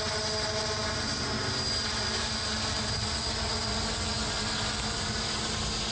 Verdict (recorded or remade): recorded